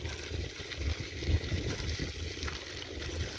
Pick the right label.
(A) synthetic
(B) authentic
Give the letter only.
B